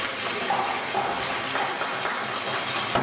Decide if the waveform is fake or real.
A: real